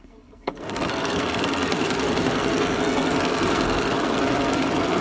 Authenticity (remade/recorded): remade